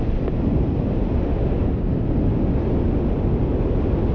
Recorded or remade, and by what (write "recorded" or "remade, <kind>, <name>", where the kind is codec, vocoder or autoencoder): recorded